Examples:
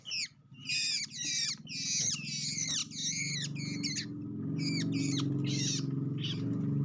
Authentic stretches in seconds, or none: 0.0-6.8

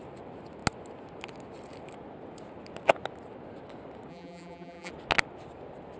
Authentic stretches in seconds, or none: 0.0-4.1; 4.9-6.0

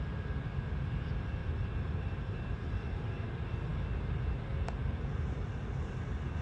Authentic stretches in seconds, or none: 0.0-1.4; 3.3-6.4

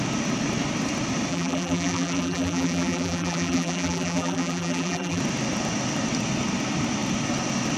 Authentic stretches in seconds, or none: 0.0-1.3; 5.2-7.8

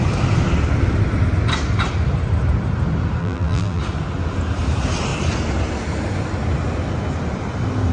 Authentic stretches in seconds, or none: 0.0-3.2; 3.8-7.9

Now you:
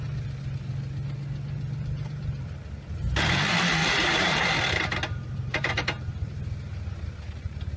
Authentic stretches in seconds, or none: 0.0-3.8; 5.7-7.8